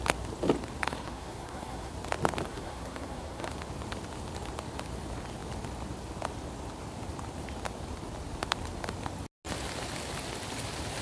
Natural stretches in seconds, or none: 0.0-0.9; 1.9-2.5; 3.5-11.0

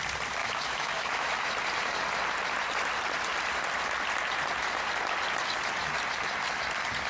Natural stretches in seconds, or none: 0.0-0.4; 1.5-7.1

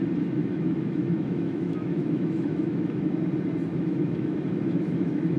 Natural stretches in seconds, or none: 0.0-0.4; 3.1-3.7

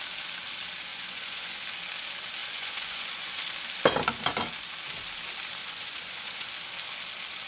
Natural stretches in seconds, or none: 0.0-0.9; 1.6-2.4; 3.4-5.6; 6.5-7.5

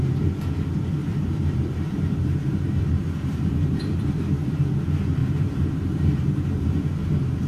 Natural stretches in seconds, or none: 0.0-1.0; 4.2-5.2; 6.8-7.5

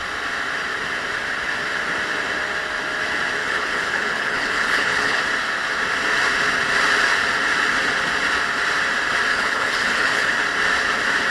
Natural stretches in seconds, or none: 0.0-3.4; 5.2-9.3; 10.3-11.3

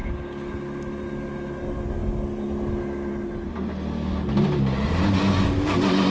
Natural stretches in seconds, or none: 0.0-6.1

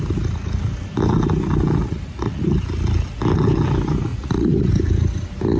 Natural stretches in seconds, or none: 0.0-1.8; 2.4-4.1; 4.7-5.6